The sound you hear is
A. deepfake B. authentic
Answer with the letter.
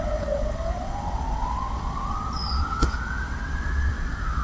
A